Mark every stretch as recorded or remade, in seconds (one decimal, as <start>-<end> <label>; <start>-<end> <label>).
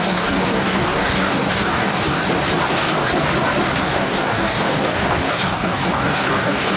0.0-2.2 remade; 2.2-2.7 recorded; 2.7-3.1 remade; 3.1-3.8 recorded; 3.8-6.8 remade